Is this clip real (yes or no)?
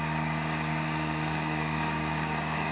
no